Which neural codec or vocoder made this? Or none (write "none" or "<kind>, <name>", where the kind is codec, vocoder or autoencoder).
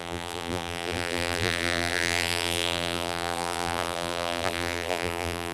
vocoder, BigVGAN v2